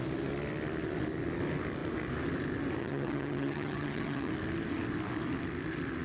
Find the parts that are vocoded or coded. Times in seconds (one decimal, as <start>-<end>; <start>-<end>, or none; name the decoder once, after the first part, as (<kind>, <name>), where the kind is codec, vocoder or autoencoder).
2.8-4.3 (vocoder, HiFi-GAN)